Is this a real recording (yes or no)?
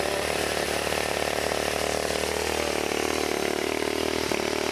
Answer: yes